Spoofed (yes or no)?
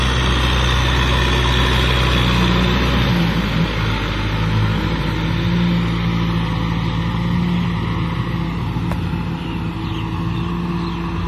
no